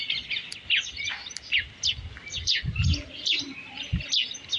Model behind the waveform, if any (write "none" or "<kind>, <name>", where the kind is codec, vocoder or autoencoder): none